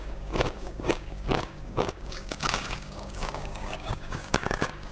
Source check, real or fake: fake